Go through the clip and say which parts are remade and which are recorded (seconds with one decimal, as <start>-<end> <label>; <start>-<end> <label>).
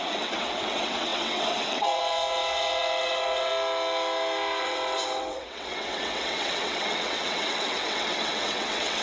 0.0-3.5 remade; 3.5-4.6 recorded; 4.6-9.0 remade